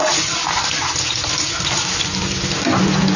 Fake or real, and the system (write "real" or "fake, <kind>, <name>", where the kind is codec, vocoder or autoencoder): real